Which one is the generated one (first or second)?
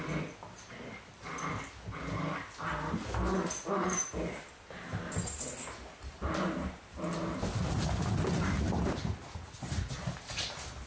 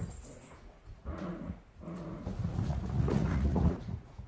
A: second